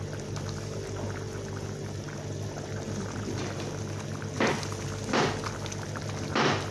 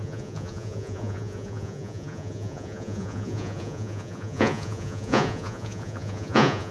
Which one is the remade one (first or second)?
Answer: second